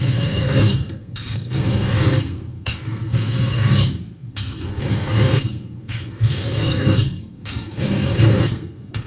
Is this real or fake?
fake